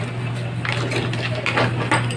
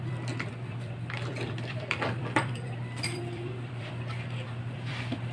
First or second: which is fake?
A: second